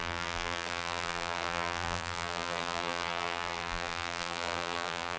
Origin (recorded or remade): remade